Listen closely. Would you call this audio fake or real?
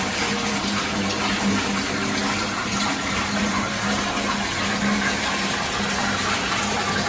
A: fake